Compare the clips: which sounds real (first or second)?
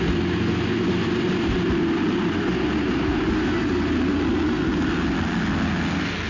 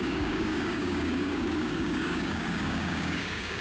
first